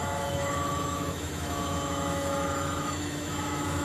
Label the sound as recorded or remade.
remade